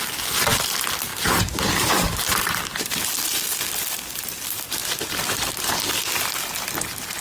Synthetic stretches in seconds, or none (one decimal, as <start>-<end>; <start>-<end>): 1.1-3.0